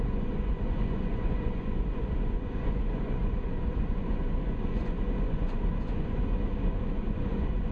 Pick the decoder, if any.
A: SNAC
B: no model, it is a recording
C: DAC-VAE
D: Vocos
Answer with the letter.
D